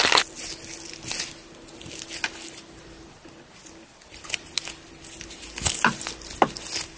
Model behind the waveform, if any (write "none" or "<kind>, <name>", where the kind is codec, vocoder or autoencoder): none